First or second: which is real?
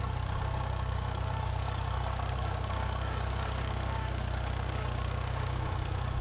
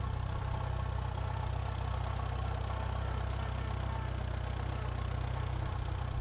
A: second